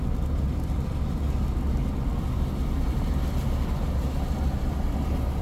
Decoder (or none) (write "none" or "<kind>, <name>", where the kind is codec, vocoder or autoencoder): none